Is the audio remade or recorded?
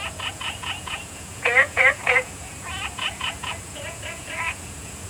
remade